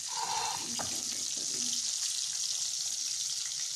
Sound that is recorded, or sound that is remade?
recorded